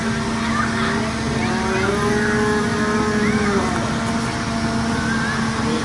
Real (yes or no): yes